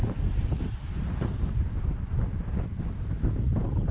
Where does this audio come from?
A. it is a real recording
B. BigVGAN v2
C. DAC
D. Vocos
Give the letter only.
A